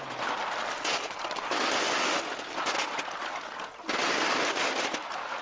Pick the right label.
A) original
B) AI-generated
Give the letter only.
A